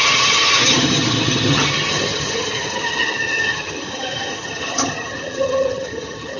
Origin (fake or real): fake